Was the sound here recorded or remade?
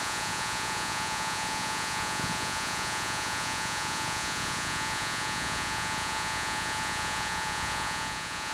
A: remade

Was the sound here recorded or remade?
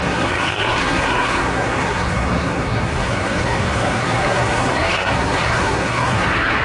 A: remade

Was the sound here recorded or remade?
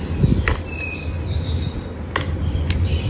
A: recorded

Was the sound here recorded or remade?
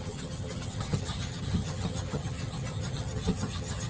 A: remade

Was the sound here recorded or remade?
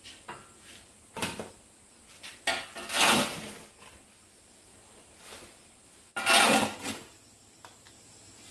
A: recorded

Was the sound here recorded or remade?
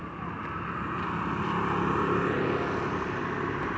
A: recorded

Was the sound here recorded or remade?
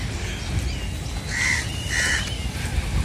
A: recorded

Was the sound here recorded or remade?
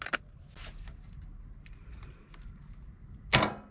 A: recorded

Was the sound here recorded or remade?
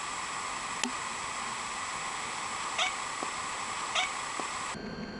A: recorded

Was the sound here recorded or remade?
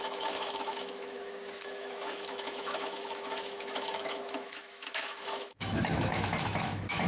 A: remade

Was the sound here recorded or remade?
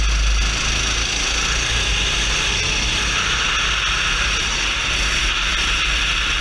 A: recorded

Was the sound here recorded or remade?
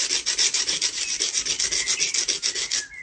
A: recorded